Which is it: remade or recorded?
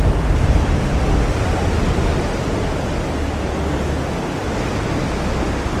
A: recorded